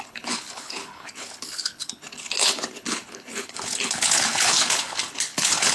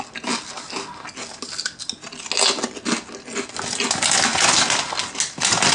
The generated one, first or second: first